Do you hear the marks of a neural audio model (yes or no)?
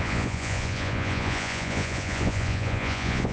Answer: yes